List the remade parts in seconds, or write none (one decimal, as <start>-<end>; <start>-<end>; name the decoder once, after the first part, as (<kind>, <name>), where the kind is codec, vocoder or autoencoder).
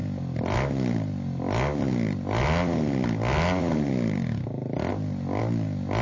none